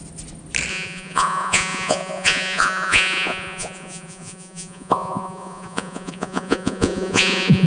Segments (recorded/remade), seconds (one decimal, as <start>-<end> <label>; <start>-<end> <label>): 0.0-0.7 recorded; 0.7-7.7 remade